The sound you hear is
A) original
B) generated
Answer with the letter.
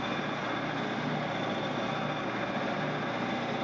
A